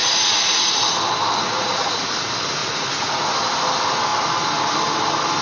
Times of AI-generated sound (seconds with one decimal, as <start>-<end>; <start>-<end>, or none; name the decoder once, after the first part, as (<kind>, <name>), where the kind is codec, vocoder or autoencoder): 0.0-0.9 (vocoder, Vocos); 1.4-2.0; 2.6-3.2